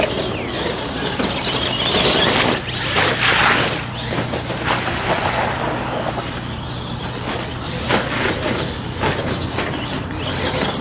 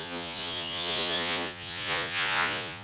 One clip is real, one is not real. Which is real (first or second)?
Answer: first